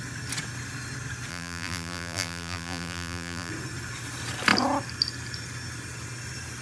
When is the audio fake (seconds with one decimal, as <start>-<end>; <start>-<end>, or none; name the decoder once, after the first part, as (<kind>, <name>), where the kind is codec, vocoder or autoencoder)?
1.3-3.5 (vocoder, BigVGAN v2)

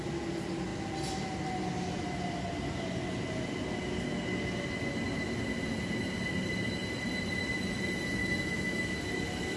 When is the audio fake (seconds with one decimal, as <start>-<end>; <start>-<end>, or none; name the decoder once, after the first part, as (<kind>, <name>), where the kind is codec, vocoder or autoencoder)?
8.2-9.0 (autoencoder, DAC-VAE)

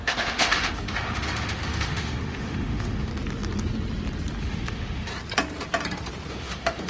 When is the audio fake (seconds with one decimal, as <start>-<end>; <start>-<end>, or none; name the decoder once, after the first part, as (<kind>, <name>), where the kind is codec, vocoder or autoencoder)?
0.0-3.1 (autoencoder, DAC-VAE); 4.4-5.1; 6.3-6.9

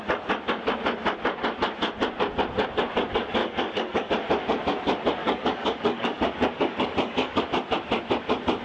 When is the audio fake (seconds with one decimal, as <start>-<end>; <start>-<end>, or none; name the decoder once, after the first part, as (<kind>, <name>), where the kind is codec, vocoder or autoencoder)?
3.4-4.1 (codec, DAC); 5.2-7.5

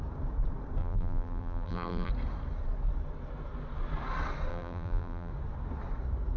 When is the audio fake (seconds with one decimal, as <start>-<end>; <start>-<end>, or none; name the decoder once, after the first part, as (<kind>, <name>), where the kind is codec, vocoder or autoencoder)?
0.8-2.1 (vocoder, BigVGAN v2); 4.5-5.3

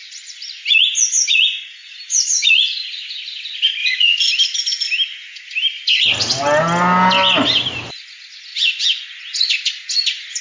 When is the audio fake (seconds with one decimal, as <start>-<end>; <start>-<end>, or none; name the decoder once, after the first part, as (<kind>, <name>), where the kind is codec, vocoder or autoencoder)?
3.8-4.3 (vocoder, Vocos)